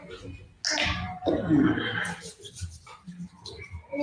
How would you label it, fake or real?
real